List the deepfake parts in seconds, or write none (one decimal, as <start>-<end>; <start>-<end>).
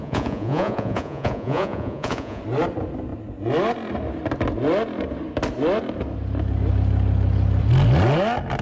0.0-2.4